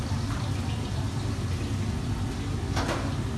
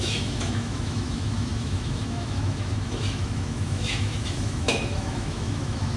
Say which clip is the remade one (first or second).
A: second